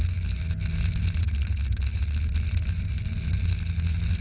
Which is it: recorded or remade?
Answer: recorded